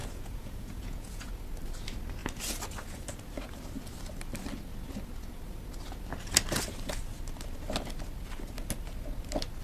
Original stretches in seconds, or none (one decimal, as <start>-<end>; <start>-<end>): 1.3-9.6